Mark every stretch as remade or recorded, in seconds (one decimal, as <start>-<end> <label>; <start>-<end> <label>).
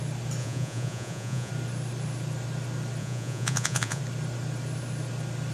0.0-0.4 recorded; 0.4-1.5 remade; 1.5-3.0 recorded; 3.0-4.0 remade; 4.0-5.5 recorded